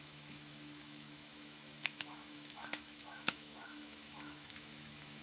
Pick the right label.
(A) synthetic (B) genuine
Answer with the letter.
A